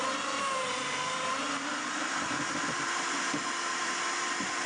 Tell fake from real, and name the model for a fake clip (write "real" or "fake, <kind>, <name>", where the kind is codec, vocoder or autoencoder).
fake, vocoder, BigVGAN v2